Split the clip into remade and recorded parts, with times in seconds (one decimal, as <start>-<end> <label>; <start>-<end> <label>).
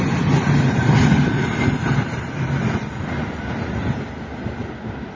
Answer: 0.0-5.2 recorded